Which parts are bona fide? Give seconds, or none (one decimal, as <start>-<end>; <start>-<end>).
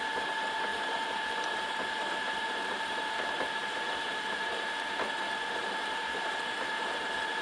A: 0.0-0.7; 4.9-5.6; 7.0-7.4